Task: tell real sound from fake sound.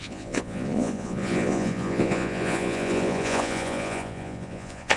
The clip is fake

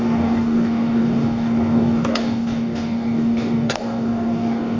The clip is fake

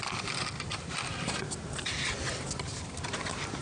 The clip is real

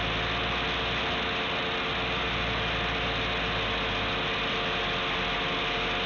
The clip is real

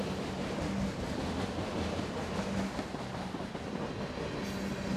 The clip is real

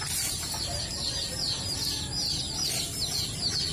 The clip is real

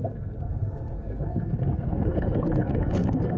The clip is fake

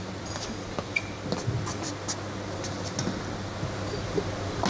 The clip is real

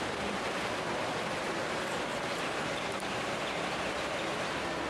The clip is real